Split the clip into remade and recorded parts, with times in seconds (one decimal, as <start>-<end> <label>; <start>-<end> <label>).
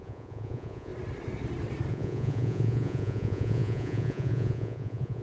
0.0-0.9 remade; 0.9-1.9 recorded; 1.9-5.2 remade